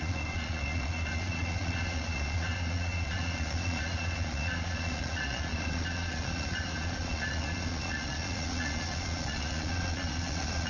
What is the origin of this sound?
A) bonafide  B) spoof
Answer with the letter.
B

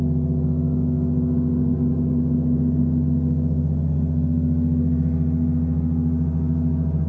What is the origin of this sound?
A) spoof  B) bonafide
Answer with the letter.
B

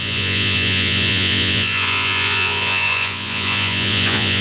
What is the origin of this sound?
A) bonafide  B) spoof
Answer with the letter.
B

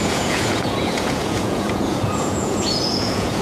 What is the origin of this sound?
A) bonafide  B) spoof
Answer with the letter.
B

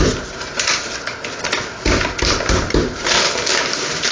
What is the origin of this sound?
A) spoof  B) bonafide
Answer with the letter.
B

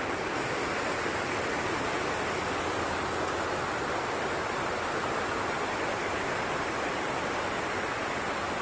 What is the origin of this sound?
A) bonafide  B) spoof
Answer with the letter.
A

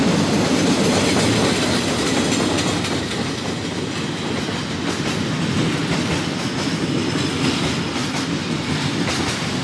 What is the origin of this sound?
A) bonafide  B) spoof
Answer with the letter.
A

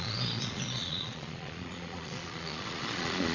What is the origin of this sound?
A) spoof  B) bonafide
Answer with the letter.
A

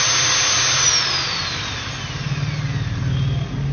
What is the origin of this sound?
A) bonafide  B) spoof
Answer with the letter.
A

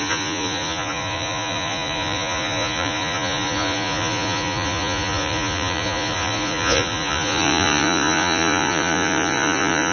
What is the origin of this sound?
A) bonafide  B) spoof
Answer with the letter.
B